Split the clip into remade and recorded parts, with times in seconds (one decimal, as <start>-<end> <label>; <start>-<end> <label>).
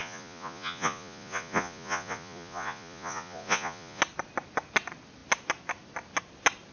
0.0-4.0 remade; 4.0-6.7 recorded